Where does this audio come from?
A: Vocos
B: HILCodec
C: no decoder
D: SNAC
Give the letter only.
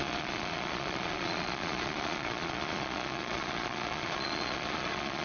A